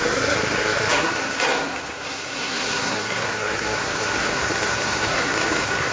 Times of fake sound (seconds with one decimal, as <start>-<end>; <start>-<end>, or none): 0.0-5.9